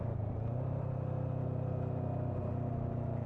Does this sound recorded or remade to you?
recorded